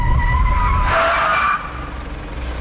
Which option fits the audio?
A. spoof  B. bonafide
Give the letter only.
B